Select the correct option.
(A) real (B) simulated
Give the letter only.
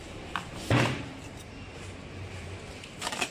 B